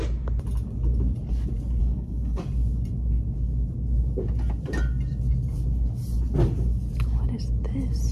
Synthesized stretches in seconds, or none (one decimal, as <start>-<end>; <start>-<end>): 1.8-2.4